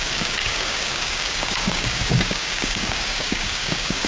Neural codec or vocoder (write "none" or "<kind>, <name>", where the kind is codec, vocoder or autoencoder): codec, DAC